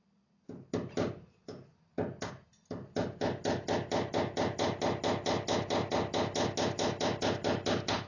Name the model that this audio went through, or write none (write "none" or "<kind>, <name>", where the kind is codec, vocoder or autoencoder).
none